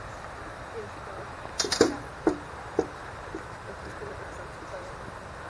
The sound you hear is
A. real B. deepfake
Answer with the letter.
B